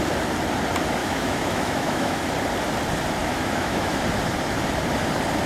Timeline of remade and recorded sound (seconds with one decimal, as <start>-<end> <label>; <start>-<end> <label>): 0.0-1.0 recorded; 1.0-2.3 remade; 2.3-3.2 recorded; 3.2-4.0 remade; 4.0-5.5 recorded

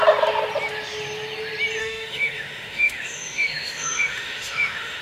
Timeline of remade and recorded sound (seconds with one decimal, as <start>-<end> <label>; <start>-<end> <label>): 0.0-1.8 recorded; 1.8-5.0 remade

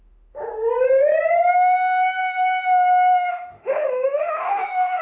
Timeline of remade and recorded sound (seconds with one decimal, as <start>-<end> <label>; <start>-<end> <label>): 0.0-0.5 remade; 0.5-1.5 recorded; 1.5-5.0 remade

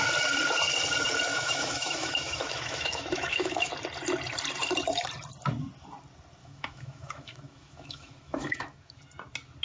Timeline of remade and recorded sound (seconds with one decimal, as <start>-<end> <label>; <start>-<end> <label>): 0.0-1.3 recorded; 1.3-3.7 remade; 3.7-6.4 recorded; 6.4-9.0 remade; 9.0-9.6 recorded

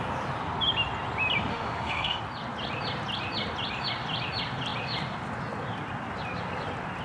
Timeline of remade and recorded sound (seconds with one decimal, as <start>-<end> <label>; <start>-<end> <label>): 0.0-1.5 recorded; 1.5-2.2 remade; 2.2-7.0 recorded